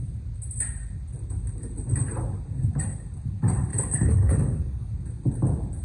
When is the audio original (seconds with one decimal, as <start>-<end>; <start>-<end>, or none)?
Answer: 0.0-3.7; 4.9-5.8